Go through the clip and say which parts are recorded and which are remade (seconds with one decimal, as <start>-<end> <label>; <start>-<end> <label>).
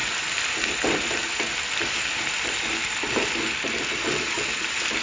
0.0-5.0 remade